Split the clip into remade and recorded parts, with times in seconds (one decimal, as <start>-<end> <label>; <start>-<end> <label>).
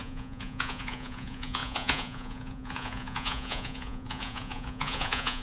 0.0-5.4 remade